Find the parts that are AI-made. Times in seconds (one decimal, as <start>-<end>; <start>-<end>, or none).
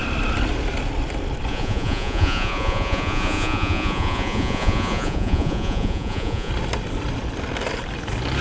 1.5-6.5